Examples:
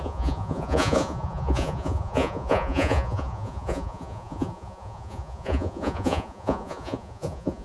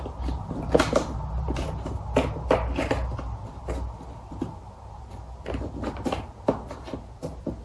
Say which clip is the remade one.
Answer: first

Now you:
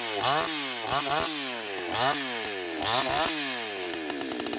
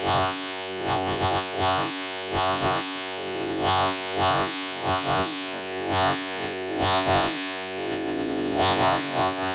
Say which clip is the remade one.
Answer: second